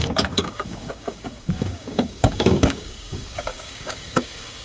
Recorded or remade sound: remade